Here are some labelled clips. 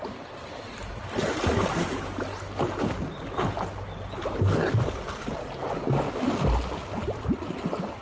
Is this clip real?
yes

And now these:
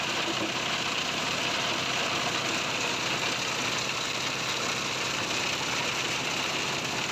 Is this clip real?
yes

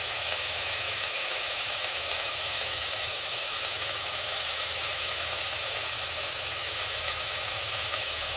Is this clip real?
no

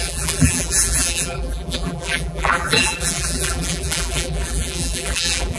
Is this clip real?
no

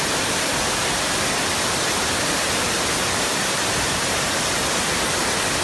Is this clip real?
yes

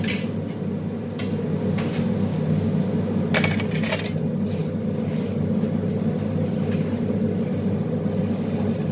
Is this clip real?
yes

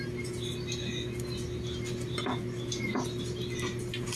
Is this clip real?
yes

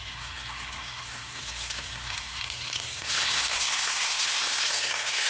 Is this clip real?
no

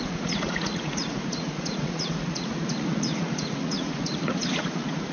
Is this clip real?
no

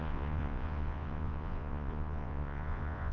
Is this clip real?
no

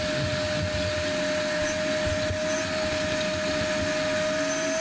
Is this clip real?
yes